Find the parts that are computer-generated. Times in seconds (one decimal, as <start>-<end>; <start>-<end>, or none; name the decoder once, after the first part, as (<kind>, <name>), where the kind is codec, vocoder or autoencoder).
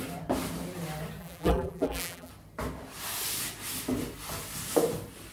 1.2-2.3 (vocoder, BigVGAN v2)